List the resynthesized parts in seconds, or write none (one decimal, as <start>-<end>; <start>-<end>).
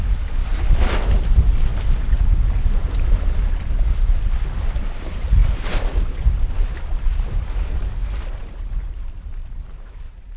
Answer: none